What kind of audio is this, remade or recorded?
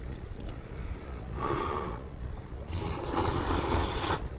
remade